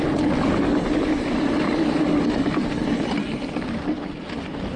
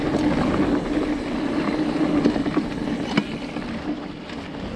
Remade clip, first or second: first